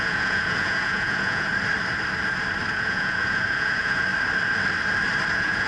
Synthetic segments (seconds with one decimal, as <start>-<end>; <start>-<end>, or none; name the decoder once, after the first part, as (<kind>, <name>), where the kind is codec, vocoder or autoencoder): 0.0-1.5 (vocoder, Vocos); 2.7-4.1; 5.3-5.7